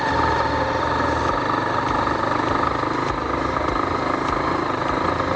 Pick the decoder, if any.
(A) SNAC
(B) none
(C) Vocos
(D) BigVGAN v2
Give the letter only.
D